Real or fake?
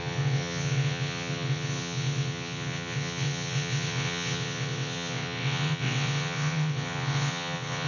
fake